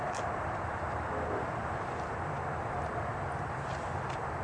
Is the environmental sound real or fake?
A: fake